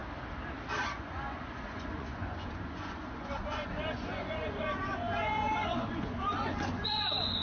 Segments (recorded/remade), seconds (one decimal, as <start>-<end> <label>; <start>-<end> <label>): 0.0-0.8 recorded; 0.8-7.4 remade